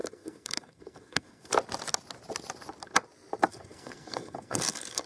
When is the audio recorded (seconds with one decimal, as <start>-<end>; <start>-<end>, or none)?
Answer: 1.5-3.5